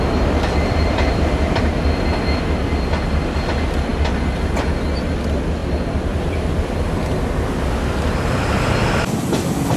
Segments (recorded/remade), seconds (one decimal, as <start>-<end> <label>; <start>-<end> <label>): 0.0-9.8 recorded